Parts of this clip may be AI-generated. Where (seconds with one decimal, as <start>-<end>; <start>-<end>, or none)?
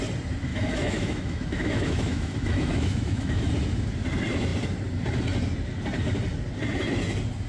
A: 0.5-3.5